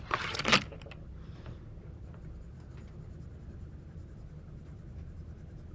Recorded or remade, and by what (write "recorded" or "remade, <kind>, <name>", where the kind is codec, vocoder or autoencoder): recorded